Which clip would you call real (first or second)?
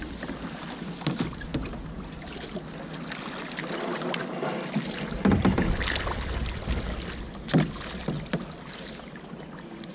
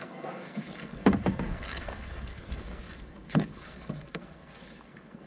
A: first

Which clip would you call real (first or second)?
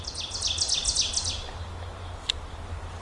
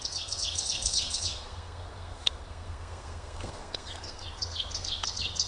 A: first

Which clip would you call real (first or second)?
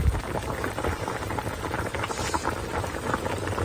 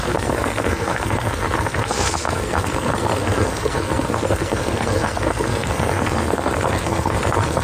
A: first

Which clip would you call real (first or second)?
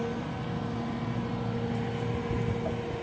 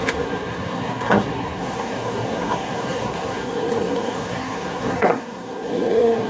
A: first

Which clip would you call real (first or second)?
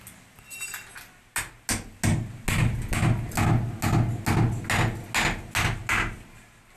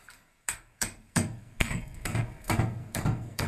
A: first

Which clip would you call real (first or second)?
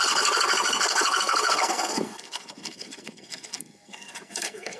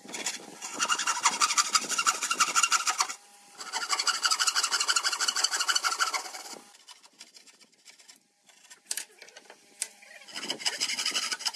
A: second